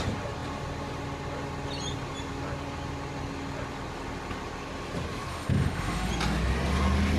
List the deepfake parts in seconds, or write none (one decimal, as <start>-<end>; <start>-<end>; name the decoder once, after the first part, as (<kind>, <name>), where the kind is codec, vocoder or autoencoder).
5.3-6.1 (autoencoder, DAC-VAE)